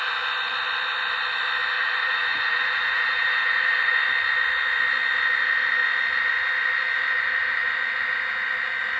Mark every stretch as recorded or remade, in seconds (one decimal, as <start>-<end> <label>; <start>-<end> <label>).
0.0-1.8 recorded; 1.8-3.9 remade; 3.9-9.0 recorded